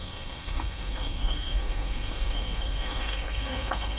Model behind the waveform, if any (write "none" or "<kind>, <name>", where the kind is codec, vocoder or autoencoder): codec, SNAC